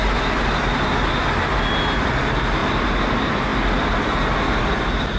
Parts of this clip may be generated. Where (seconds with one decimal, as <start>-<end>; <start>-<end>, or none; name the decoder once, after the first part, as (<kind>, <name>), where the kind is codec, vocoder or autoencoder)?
none